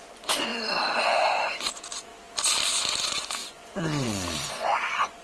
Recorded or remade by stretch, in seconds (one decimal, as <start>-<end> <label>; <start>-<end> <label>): 0.0-0.5 remade; 0.5-1.0 recorded; 1.0-2.1 remade; 2.1-2.7 recorded; 2.7-5.2 remade